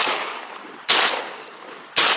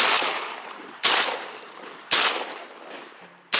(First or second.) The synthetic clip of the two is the second